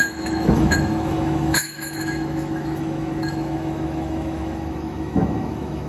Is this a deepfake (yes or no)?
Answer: yes